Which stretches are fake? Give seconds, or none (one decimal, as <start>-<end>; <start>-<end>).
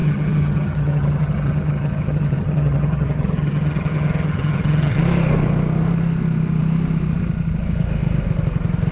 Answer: 0.0-5.0